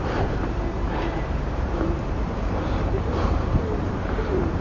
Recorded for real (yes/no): no